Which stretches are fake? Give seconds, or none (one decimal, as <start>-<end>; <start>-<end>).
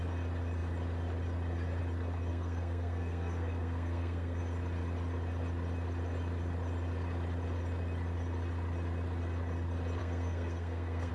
2.3-4.4; 10.0-11.1